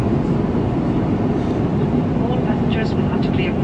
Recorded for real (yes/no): yes